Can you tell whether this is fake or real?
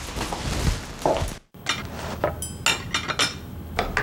real